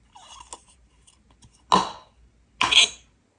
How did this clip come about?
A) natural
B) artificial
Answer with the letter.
A